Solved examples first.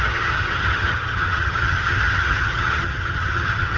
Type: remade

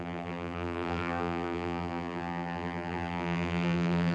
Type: remade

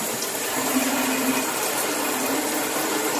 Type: recorded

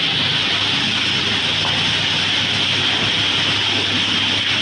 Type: recorded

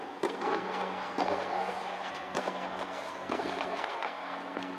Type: remade